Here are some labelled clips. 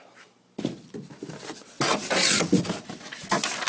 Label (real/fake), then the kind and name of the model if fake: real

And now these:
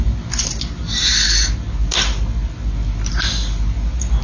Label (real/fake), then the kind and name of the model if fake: real